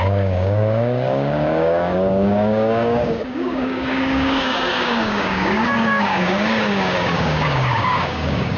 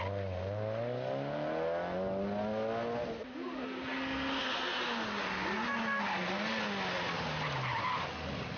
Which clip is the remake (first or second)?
first